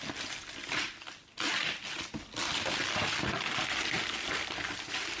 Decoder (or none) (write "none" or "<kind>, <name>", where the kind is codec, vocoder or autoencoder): none